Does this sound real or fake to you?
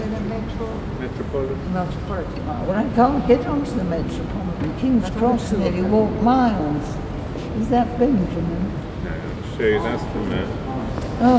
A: real